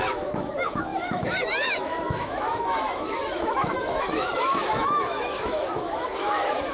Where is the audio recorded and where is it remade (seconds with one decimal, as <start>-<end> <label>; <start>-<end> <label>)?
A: 0.0-6.7 remade